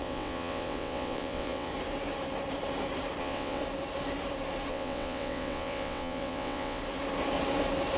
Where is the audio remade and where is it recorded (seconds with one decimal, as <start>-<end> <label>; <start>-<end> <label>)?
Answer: 0.0-1.7 remade; 1.7-3.2 recorded; 3.2-3.6 remade; 3.6-4.7 recorded; 4.7-6.8 remade; 6.8-8.0 recorded